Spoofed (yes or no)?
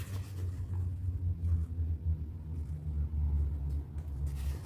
no